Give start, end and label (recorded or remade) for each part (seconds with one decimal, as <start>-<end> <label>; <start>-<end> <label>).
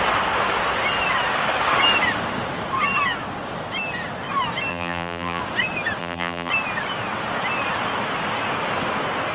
0.0-4.7 recorded; 4.7-5.4 remade; 5.4-6.0 recorded; 6.0-6.5 remade; 6.5-9.3 recorded